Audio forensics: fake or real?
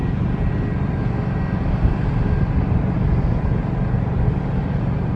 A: real